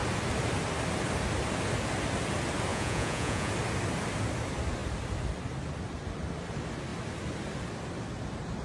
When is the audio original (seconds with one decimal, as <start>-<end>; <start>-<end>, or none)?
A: 0.0-2.7; 3.5-8.6